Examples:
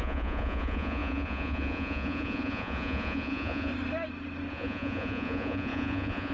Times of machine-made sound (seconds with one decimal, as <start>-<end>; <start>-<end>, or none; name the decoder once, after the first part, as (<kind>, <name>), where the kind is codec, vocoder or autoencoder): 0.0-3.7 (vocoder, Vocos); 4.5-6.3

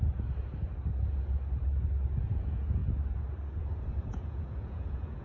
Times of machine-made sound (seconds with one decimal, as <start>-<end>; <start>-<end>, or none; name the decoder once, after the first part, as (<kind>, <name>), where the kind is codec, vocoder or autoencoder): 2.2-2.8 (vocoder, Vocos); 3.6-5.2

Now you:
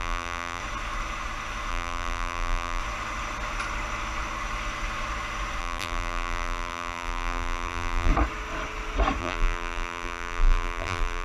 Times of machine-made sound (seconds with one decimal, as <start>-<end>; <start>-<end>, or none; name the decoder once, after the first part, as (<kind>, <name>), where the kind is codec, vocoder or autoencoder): 0.0-0.6 (vocoder, BigVGAN v2); 1.7-2.8; 5.6-8.1; 9.2-11.2

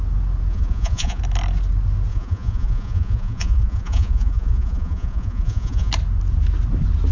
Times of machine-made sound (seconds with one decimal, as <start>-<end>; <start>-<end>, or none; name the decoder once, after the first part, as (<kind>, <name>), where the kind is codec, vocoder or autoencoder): 0.5-1.2 (vocoder, Vocos); 2.1-5.9

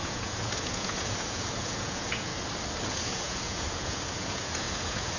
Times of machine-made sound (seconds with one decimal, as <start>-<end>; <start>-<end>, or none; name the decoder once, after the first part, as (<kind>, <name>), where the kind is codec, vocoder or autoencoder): 0.0-2.3 (vocoder, Vocos); 2.9-5.2

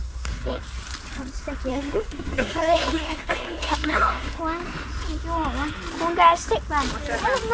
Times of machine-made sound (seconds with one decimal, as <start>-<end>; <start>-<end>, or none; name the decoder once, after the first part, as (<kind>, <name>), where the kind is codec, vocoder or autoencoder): 0.0-0.6 (codec, SNAC); 1.7-4.4

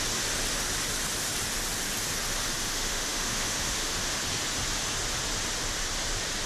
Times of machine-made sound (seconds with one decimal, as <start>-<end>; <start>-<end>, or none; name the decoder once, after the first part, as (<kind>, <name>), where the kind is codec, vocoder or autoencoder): 2.7-4.2 (autoencoder, DAC-VAE)